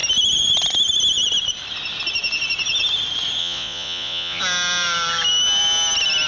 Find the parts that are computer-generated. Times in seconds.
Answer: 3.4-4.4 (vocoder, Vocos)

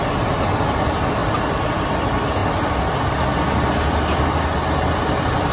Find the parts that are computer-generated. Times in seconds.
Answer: 1.2-1.8 (vocoder, BigVGAN v2)